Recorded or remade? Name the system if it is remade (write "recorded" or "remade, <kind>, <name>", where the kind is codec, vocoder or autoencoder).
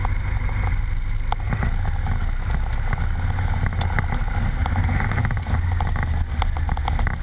recorded